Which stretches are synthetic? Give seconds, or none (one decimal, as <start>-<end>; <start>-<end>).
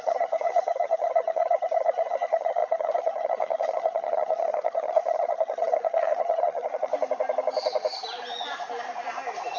0.0-6.9